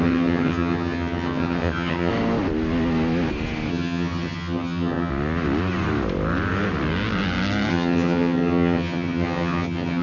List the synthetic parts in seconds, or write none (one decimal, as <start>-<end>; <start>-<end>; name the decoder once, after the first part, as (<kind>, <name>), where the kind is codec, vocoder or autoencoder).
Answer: 0.0-2.1 (vocoder, HiFi-GAN); 3.7-5.1; 7.7-10.0